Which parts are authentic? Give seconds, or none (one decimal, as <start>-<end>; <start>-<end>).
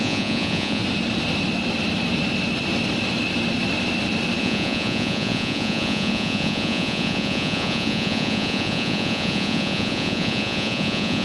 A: 0.8-4.4